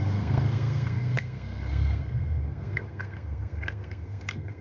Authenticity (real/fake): fake